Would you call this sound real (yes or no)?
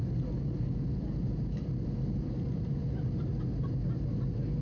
yes